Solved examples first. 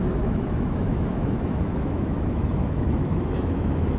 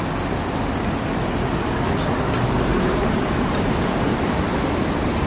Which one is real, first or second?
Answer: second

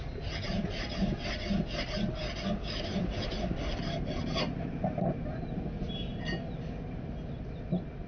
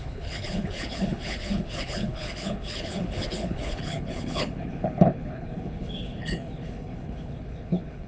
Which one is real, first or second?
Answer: first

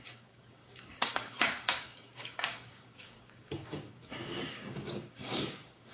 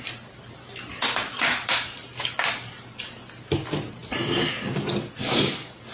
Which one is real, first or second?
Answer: second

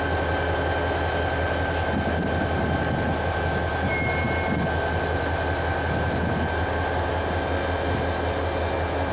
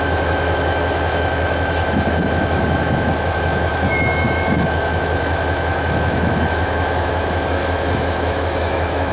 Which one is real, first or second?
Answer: first